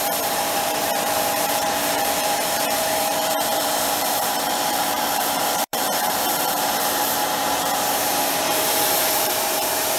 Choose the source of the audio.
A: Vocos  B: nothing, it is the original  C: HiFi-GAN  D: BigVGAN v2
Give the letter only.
D